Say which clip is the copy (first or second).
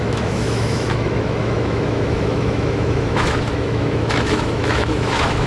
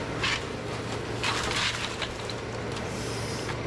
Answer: first